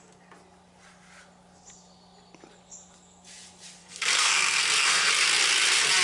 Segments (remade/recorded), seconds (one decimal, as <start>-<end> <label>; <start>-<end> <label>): 0.0-3.8 recorded; 3.8-5.1 remade; 5.1-6.0 recorded